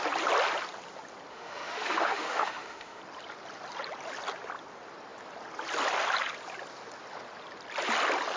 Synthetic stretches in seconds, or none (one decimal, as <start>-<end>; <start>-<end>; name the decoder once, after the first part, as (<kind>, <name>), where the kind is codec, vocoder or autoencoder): 1.3-3.0 (autoencoder, DAC-VAE)